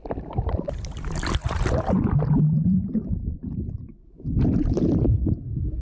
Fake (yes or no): no